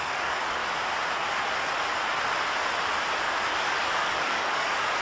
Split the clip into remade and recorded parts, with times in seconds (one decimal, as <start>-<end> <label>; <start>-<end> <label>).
0.0-0.6 remade; 0.6-3.6 recorded; 3.6-5.0 remade